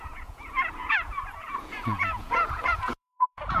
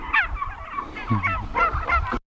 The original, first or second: second